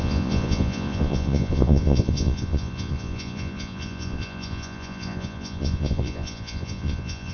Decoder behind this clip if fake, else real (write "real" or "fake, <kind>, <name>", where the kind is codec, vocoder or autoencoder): fake, vocoder, Vocos